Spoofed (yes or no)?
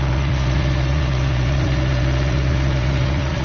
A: yes